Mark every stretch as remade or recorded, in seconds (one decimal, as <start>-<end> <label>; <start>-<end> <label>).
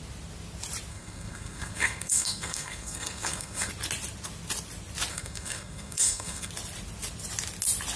0.0-0.9 recorded; 0.9-3.7 remade; 3.7-5.1 recorded; 5.1-6.5 remade; 6.5-8.0 recorded